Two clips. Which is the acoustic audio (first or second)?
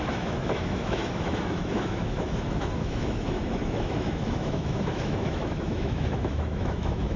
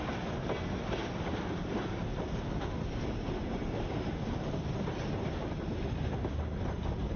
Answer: second